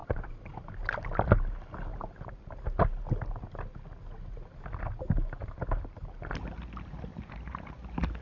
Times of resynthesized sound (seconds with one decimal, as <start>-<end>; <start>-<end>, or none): 0.0-0.7; 1.9-2.6; 5.4-6.6; 7.1-8.2